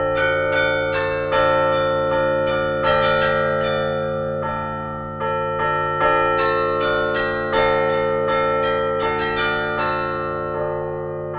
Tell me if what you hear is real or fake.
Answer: real